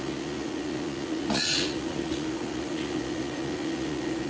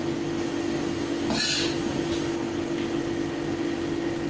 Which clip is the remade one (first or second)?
first